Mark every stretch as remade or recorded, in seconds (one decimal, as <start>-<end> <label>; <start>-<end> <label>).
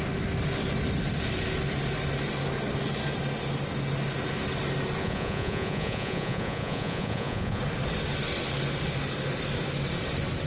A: 0.0-5.0 recorded; 5.0-7.6 remade; 7.6-10.5 recorded